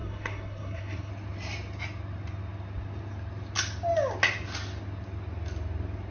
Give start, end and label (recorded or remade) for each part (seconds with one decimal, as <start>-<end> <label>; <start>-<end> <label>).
0.0-1.1 remade; 1.1-6.1 recorded

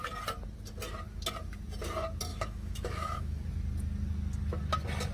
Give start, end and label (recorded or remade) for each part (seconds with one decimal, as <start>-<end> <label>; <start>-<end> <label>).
0.0-2.3 recorded; 2.3-3.4 remade; 3.4-5.1 recorded